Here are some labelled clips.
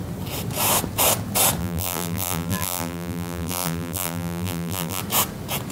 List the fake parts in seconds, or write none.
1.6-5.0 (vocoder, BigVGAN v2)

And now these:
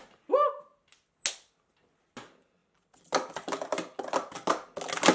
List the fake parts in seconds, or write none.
2.6-4.0 (vocoder, BigVGAN v2)

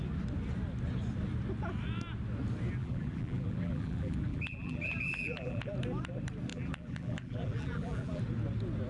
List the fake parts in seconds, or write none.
2.8-5.7 (vocoder, BigVGAN v2); 6.5-8.2

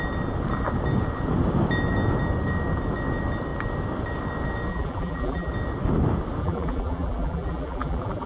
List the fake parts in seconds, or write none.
4.7-5.5 (vocoder, BigVGAN v2); 6.4-8.3

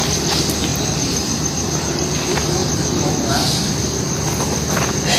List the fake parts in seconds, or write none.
0.7-2.1 (vocoder, BigVGAN v2); 2.6-3.3

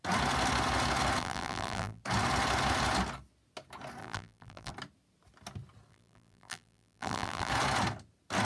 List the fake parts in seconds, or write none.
1.2-2.0 (vocoder, BigVGAN v2); 4.0-4.7; 5.9-7.5

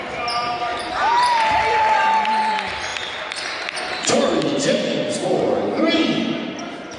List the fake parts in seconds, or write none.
0.7-2.5 (vocoder, BigVGAN v2)

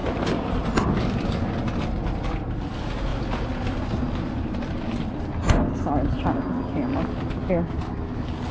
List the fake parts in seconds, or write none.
0.0-0.9 (vocoder, BigVGAN v2); 3.1-5.6; 6.9-7.5